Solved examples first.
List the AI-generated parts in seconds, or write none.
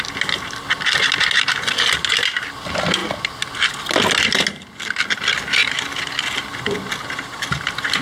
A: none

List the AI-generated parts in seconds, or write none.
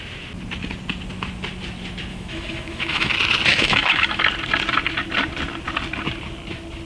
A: 2.1-3.1; 3.5-4.2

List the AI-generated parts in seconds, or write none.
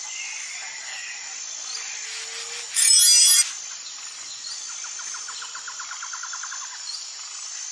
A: none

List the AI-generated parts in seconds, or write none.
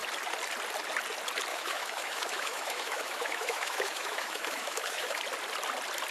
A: 1.5-5.2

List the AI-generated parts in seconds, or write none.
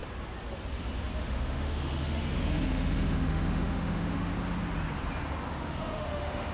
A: 1.2-4.3; 5.6-6.5